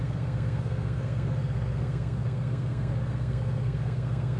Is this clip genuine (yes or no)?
no